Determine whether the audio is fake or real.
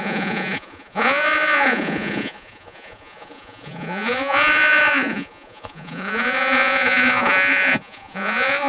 fake